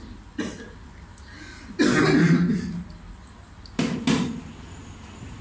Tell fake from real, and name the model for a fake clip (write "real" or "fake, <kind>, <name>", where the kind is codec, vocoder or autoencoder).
real